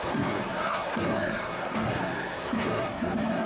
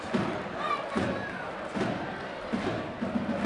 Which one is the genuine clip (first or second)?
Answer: second